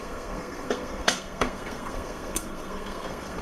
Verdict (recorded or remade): remade